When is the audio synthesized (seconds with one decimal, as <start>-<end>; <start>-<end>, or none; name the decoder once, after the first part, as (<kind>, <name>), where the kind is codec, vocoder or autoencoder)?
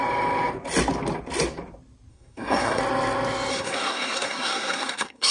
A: 2.1-2.8 (codec, SNAC); 3.5-5.3